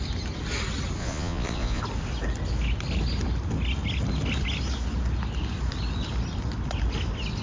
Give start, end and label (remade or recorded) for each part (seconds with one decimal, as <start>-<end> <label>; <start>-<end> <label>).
0.0-1.0 recorded; 1.0-1.8 remade; 1.8-7.4 recorded